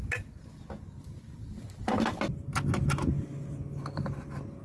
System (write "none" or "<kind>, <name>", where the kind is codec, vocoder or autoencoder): none